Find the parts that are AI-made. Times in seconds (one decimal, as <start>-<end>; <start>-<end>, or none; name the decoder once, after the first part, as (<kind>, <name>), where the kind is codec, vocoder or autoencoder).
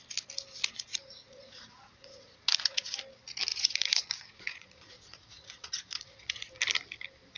0.9-3.0 (vocoder, Vocos); 3.5-6.5